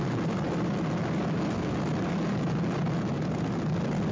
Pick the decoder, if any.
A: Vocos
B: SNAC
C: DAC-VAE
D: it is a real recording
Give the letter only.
D